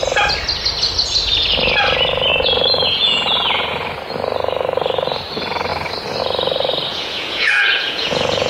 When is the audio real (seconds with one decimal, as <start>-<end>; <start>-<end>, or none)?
0.0-2.3; 3.7-6.9